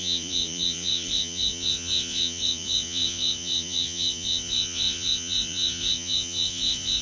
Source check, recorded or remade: remade